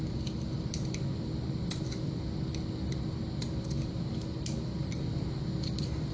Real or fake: real